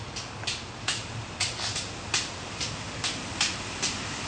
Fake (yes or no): no